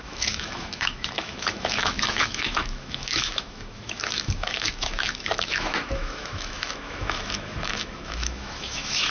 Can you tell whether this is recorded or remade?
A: remade